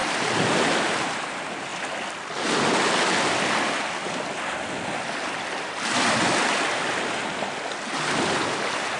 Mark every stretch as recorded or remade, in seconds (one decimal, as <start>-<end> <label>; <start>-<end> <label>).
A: 0.0-9.0 recorded